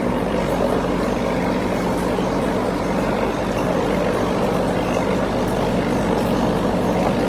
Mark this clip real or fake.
real